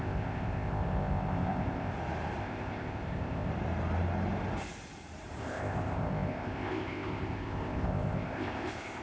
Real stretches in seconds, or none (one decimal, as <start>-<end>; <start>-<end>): 1.9-2.4; 3.5-5.4